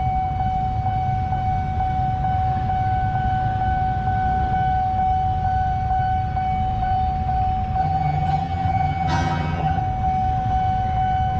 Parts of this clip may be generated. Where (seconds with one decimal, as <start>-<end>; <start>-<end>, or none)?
7.8-9.8